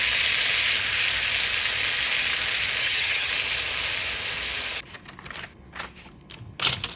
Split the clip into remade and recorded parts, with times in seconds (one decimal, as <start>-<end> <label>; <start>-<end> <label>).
0.0-2.8 recorded; 2.8-3.3 remade; 3.3-7.0 recorded

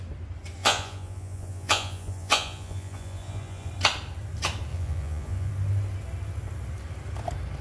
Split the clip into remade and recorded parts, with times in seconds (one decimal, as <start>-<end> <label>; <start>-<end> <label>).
0.0-0.6 recorded; 0.6-3.7 remade; 3.7-4.7 recorded; 4.7-5.5 remade; 5.5-7.6 recorded